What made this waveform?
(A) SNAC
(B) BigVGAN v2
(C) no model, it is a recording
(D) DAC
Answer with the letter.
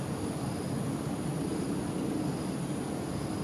C